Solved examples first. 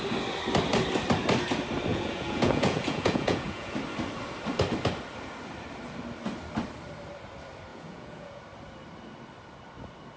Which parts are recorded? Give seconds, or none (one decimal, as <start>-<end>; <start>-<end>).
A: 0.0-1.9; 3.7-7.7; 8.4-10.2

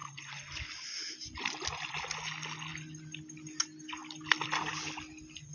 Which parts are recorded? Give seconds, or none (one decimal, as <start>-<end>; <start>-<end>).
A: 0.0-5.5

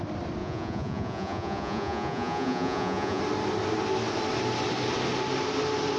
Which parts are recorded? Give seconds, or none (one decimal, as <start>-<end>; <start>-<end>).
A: 0.0-0.4; 3.2-6.0

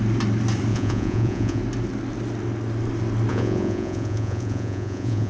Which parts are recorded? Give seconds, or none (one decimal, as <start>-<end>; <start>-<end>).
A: 0.0-0.7; 1.6-3.3